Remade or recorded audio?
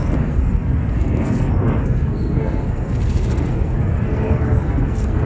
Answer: remade